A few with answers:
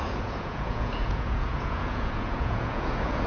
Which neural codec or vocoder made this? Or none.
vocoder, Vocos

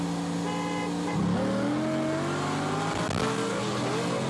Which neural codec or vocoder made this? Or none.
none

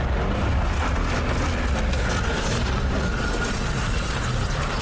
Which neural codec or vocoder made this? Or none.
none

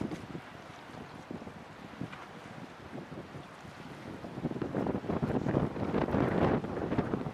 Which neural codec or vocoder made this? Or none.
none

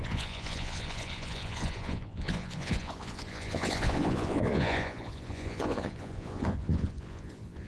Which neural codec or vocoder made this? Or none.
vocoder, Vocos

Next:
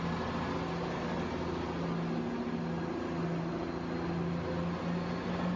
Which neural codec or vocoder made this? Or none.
none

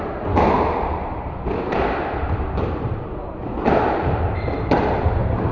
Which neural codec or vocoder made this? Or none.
none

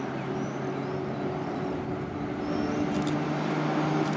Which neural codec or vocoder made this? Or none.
none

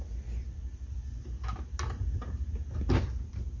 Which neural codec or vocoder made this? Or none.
none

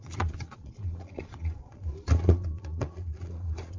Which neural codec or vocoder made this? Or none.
vocoder, Vocos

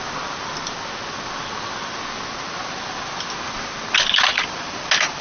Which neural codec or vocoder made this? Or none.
none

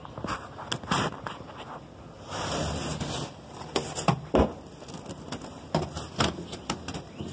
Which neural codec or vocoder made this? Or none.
none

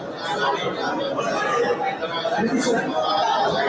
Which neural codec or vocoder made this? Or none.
none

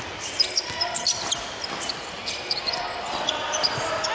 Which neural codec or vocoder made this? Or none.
none